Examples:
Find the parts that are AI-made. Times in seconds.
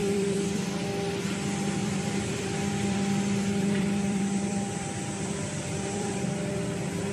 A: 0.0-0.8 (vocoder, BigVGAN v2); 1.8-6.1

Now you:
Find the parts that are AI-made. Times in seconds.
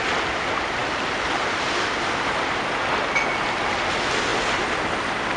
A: none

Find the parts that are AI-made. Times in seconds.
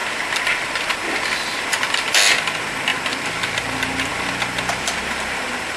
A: 0.0-2.1 (vocoder, BigVGAN v2); 2.9-3.6; 4.1-5.8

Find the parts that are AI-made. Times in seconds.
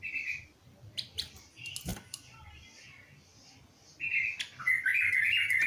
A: 0.6-1.5 (vocoder, BigVGAN v2); 1.9-2.5